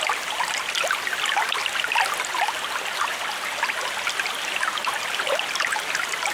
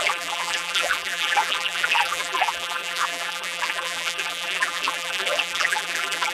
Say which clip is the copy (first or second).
second